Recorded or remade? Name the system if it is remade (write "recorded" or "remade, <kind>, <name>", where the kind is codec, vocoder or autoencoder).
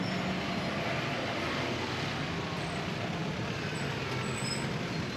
recorded